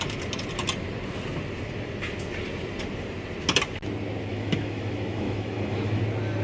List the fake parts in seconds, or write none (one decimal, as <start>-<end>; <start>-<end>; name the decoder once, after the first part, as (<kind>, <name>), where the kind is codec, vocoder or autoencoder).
4.3-6.0 (autoencoder, DAC-VAE)